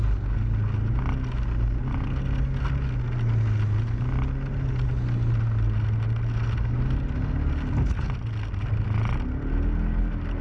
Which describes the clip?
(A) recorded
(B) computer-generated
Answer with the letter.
A